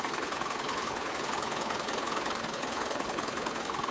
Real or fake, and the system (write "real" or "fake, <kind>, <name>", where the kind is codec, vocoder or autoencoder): fake, codec, HILCodec